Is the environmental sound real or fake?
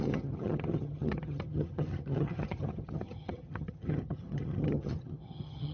fake